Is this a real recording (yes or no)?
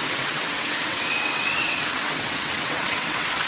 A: no